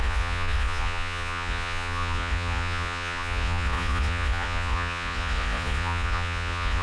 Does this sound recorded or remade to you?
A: remade